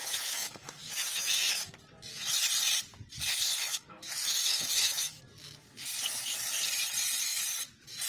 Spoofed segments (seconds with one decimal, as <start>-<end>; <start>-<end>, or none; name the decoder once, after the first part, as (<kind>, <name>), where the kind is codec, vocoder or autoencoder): 0.0-1.7 (autoencoder, DAC-VAE); 3.6-5.2